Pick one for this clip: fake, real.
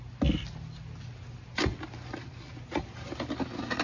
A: real